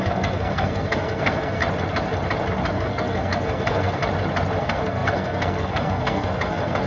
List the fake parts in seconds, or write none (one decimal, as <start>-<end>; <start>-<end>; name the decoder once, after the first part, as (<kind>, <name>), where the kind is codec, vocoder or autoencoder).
0.0-1.6 (codec, SNAC); 2.7-4.0; 4.6-6.9